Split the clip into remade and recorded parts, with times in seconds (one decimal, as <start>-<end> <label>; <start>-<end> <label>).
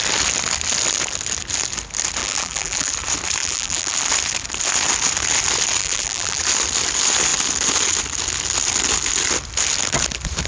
0.0-2.2 recorded; 2.2-2.9 remade; 2.9-3.4 recorded; 3.4-4.0 remade; 4.0-5.8 recorded; 5.8-6.4 remade; 6.4-10.5 recorded